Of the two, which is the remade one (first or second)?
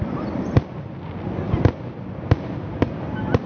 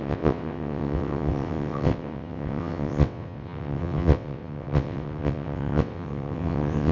second